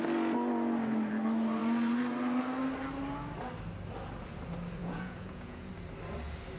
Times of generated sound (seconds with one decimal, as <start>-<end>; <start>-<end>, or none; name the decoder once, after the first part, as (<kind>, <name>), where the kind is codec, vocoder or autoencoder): 4.8-5.7 (vocoder, Vocos)